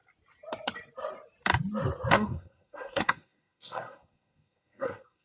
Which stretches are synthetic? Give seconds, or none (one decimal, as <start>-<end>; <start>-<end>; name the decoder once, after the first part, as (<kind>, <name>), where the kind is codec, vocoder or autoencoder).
2.1-5.2 (codec, SNAC)